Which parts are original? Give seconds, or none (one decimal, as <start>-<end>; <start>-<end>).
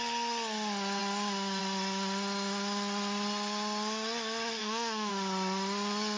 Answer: 0.0-4.6; 5.1-6.2